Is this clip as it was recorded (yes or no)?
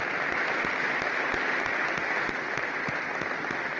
yes